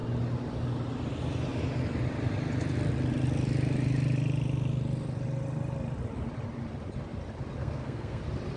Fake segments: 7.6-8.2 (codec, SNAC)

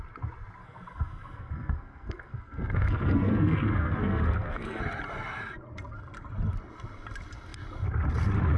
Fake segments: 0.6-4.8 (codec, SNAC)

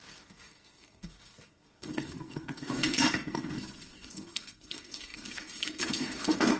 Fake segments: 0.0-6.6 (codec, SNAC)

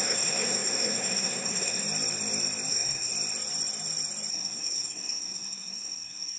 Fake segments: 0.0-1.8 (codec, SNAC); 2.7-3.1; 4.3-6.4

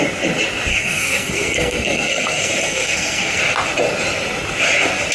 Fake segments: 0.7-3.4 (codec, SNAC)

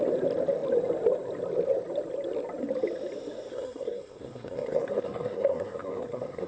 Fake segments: 3.5-6.5 (codec, SNAC)

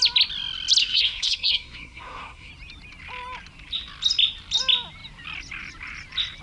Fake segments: 0.8-2.5 (codec, SNAC)